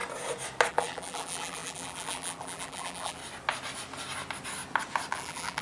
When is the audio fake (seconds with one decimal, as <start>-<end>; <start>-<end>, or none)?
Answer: 0.7-3.2; 5.1-5.6